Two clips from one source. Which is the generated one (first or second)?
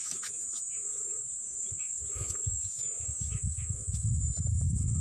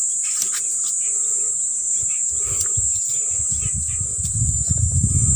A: first